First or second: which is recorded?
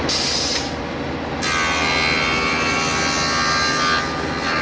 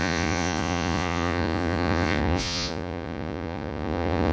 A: first